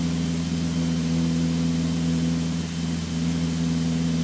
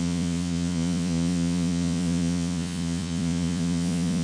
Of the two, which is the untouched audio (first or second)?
first